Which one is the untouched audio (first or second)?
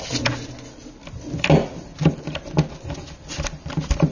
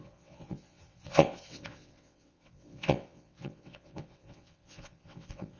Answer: first